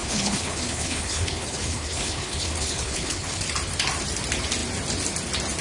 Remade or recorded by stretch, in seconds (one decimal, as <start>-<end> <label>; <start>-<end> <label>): 0.0-3.4 remade; 3.4-5.6 recorded